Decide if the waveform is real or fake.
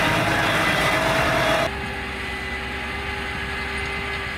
real